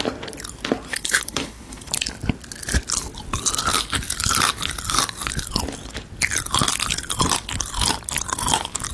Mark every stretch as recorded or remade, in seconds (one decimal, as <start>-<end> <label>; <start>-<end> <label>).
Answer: 0.0-0.9 recorded; 0.9-1.9 remade; 1.9-8.9 recorded